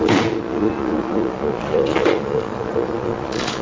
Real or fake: fake